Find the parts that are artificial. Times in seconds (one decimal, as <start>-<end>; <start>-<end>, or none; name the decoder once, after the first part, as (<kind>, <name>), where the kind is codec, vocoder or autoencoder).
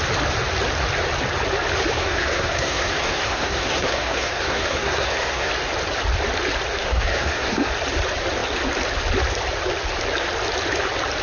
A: 2.0-5.5 (codec, SNAC); 6.8-7.7